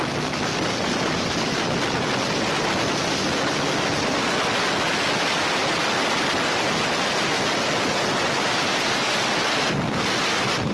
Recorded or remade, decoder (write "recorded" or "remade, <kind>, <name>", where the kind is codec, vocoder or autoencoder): recorded